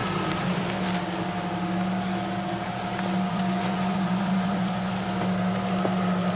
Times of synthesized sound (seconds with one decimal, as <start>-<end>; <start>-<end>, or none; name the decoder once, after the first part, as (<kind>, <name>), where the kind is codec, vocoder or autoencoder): 3.3-4.9 (vocoder, Vocos)